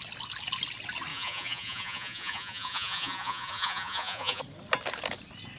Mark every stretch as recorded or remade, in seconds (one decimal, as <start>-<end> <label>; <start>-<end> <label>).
0.0-1.1 recorded; 1.1-4.4 remade; 4.4-5.6 recorded